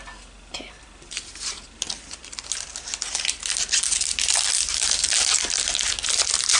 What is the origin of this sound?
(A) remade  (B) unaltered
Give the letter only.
A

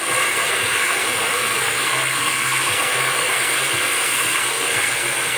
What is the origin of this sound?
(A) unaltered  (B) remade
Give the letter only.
B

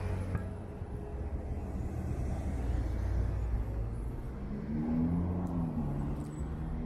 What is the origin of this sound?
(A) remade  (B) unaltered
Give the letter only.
B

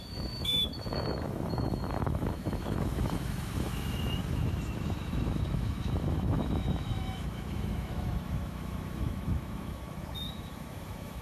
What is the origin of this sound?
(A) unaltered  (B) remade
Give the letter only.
B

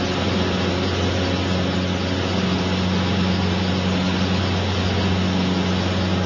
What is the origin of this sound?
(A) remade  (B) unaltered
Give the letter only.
B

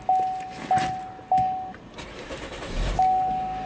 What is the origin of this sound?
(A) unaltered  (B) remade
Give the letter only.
A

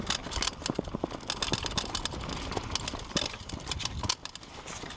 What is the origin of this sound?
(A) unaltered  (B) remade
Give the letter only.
A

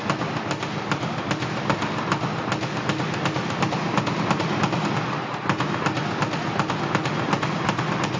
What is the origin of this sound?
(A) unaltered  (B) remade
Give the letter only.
A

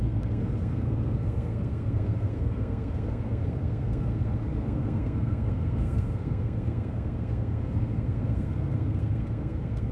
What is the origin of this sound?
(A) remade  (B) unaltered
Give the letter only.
A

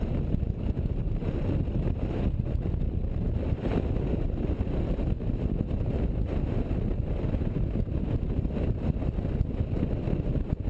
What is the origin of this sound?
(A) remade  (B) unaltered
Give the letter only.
B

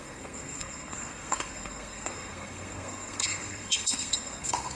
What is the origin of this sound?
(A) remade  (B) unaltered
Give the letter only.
A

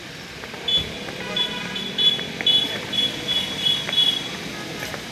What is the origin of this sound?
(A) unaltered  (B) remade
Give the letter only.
A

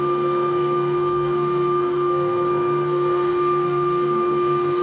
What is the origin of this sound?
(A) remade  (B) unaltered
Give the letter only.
A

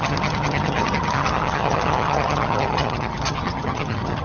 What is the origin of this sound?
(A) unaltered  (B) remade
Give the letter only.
B